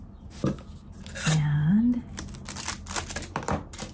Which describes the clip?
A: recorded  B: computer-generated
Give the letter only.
A